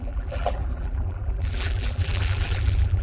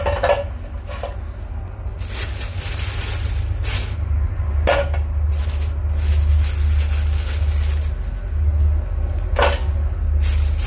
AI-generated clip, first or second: first